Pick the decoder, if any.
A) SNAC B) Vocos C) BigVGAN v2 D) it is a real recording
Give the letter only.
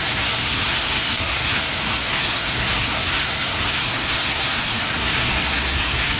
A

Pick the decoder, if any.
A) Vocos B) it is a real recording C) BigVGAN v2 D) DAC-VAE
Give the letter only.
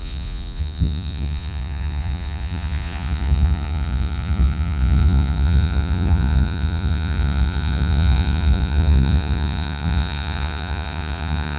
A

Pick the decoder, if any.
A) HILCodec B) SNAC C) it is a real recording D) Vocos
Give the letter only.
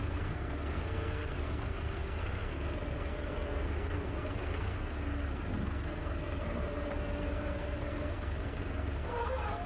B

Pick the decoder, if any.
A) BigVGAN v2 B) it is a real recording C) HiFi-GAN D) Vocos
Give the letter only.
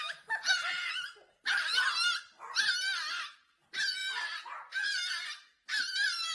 B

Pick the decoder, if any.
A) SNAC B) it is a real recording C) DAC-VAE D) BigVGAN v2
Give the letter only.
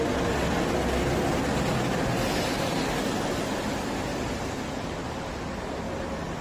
B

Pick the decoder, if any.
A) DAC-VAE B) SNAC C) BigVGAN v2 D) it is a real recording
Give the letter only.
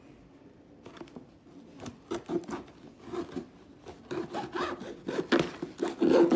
D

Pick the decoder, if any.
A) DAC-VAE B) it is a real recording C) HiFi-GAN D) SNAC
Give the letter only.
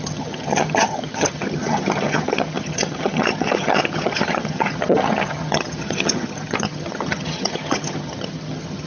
C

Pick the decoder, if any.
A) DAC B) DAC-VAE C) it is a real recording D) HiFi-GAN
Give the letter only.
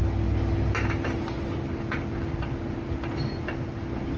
C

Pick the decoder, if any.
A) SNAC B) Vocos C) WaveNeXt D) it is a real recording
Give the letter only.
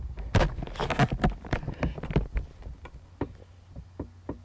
D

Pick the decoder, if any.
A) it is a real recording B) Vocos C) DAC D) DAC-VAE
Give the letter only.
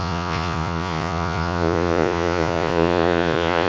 B